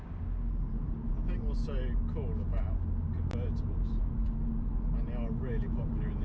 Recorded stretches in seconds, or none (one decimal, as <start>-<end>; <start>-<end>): 0.0-6.2